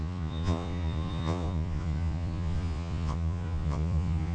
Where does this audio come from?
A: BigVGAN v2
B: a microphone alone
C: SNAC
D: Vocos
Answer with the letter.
D